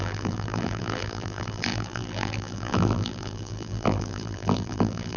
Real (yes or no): no